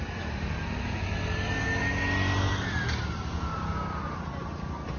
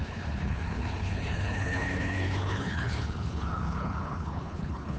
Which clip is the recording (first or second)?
first